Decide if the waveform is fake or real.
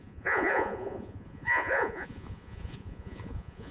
fake